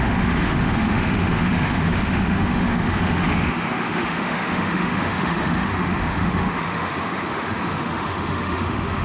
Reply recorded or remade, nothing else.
remade